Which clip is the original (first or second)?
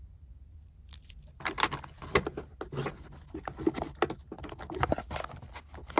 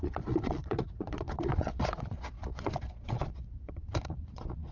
first